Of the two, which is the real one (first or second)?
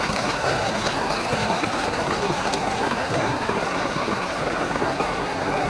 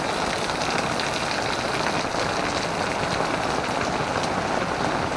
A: second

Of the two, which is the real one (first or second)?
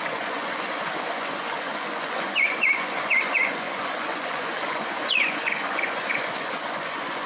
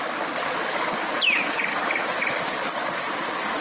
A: second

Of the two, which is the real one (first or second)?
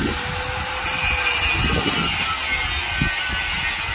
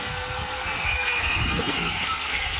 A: first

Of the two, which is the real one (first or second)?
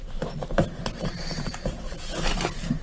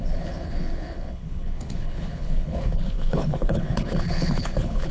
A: first